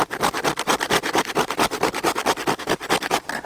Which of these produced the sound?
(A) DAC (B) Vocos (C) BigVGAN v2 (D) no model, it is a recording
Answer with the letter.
D